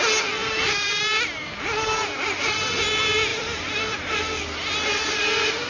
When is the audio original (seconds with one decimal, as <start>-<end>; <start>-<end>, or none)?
0.0-0.4; 1.0-3.3; 4.1-5.7